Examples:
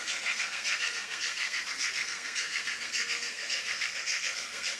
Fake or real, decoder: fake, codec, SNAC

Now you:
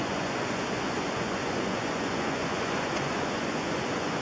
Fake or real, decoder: fake, vocoder, Vocos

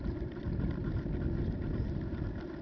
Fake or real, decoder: fake, vocoder, BigVGAN v2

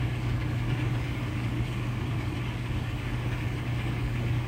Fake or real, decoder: fake, codec, DAC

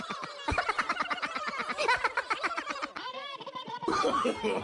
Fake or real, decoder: real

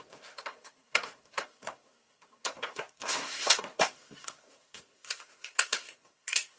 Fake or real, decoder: fake, codec, SNAC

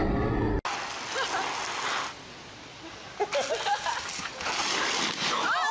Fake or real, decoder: real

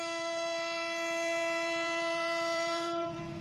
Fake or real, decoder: fake, vocoder, BigVGAN v2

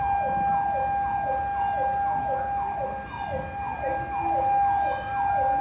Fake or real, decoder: real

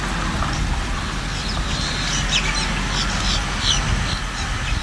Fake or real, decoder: real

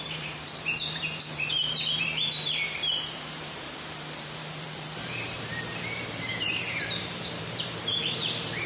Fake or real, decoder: fake, vocoder, BigVGAN v2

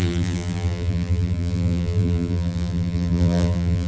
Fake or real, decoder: fake, vocoder, BigVGAN v2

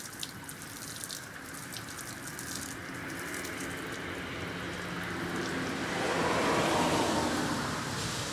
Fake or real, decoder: real